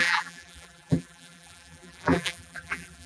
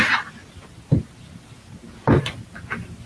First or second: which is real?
second